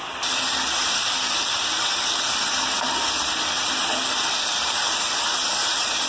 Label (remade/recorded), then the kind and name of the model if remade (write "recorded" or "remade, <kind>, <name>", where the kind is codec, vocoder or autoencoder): recorded